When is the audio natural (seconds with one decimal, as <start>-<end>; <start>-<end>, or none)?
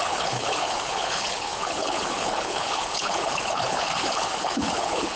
none